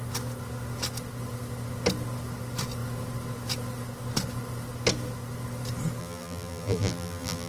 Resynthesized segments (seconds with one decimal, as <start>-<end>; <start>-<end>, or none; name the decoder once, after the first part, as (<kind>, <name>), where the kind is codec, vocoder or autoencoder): 6.0-7.5 (vocoder, BigVGAN v2)